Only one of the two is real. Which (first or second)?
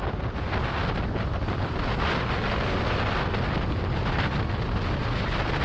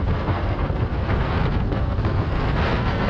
first